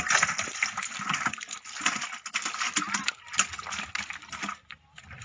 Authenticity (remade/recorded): recorded